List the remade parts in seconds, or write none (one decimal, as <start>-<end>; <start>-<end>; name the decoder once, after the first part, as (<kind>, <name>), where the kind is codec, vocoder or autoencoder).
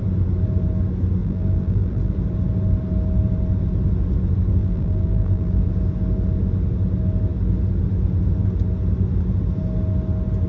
1.2-2.1 (vocoder, BigVGAN v2); 4.6-5.6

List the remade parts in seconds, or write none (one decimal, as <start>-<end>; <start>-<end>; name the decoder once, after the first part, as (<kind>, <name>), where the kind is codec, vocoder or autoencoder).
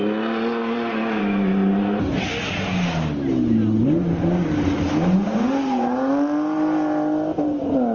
none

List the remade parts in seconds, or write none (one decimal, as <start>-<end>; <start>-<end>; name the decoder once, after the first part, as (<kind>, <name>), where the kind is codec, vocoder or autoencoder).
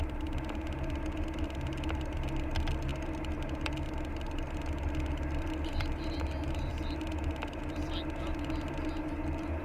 none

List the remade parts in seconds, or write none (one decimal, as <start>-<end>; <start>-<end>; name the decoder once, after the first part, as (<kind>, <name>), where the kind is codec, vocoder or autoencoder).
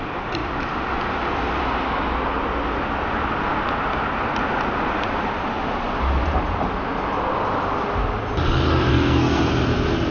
8.9-9.5 (codec, SNAC)